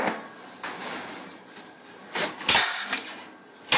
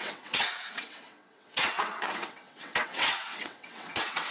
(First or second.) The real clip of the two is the first